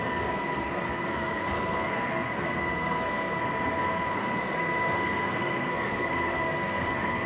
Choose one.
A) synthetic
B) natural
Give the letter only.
A